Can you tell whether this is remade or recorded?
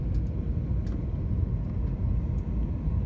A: recorded